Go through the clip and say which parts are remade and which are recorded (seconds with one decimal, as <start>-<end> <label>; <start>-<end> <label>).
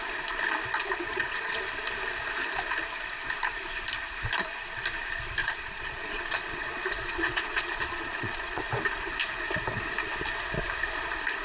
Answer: 0.0-1.1 recorded; 1.1-1.6 remade; 1.6-5.4 recorded; 5.4-8.6 remade; 8.6-11.4 recorded